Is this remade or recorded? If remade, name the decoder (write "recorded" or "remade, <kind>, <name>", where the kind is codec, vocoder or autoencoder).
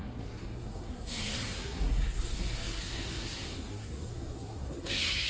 remade, codec, SNAC